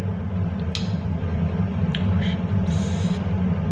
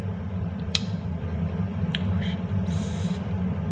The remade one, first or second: second